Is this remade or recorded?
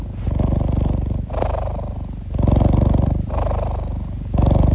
recorded